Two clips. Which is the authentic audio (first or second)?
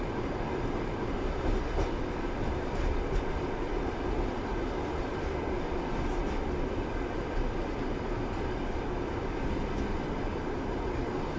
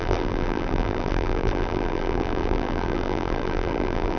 first